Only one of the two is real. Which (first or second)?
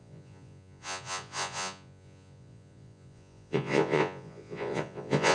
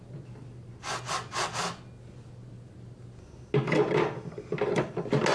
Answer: second